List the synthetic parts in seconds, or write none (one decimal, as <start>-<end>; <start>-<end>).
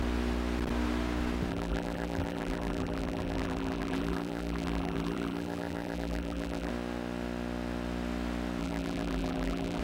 1.5-6.7; 8.6-9.8